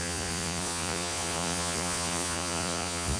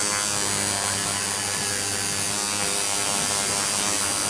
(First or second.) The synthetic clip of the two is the first